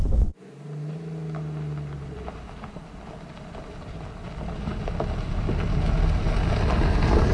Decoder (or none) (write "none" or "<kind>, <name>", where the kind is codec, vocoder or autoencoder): none